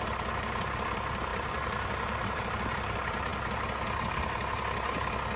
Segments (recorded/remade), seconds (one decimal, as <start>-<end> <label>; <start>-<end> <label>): 0.0-1.3 recorded; 1.3-2.5 remade; 2.5-5.4 recorded